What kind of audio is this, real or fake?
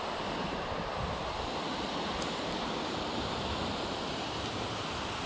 fake